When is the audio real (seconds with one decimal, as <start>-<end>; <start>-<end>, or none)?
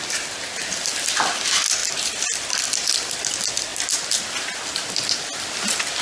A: 0.0-1.8; 3.2-6.0